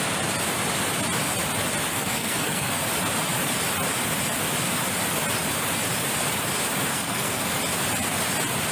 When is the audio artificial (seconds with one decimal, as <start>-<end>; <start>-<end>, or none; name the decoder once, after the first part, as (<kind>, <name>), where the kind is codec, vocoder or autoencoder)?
1.9-2.8 (codec, SNAC); 6.9-7.6